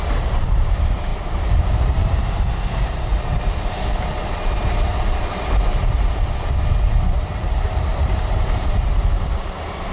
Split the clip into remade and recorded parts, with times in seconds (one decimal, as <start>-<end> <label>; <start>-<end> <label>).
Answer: 0.0-9.9 remade